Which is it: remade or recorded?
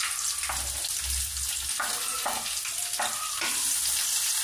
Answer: recorded